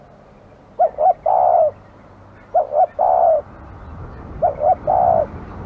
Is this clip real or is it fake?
real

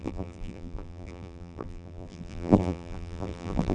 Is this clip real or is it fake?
fake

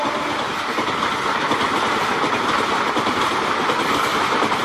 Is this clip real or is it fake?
fake